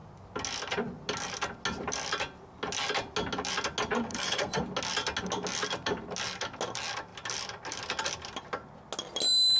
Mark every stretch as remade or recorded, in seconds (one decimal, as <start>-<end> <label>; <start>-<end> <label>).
0.0-4.1 recorded; 4.1-4.6 remade; 4.6-9.6 recorded